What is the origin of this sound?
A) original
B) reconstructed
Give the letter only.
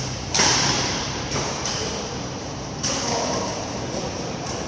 B